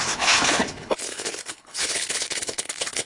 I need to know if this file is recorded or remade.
remade